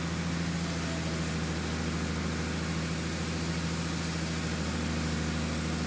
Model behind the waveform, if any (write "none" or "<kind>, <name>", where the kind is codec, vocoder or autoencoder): none